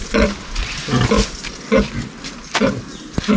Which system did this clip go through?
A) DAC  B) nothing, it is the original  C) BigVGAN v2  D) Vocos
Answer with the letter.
B